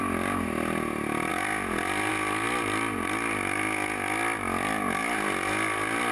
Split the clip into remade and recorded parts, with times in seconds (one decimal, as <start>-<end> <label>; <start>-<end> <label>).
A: 0.0-6.1 recorded